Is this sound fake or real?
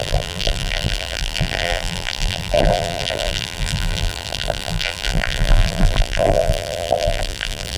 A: fake